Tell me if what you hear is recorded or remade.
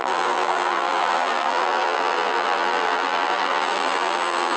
remade